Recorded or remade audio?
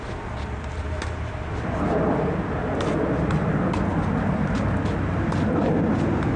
recorded